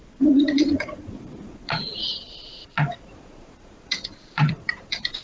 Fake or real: fake